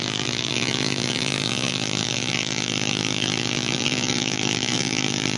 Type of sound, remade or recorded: remade